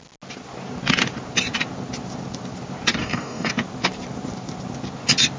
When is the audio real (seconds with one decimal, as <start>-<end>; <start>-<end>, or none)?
0.0-3.0; 3.5-5.4